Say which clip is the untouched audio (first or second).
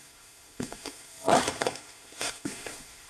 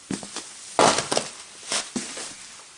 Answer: second